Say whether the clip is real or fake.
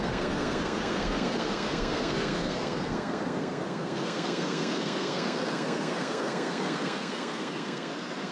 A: fake